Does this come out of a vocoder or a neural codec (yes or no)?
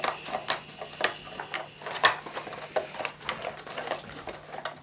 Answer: no